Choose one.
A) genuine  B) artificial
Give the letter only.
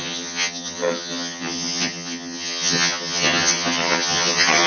B